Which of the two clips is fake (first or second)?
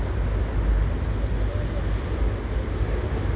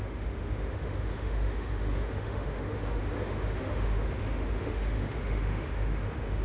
second